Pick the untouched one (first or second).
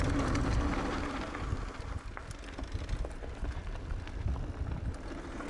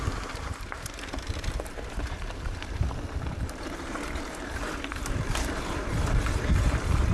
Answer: first